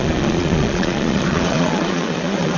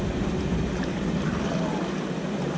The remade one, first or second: first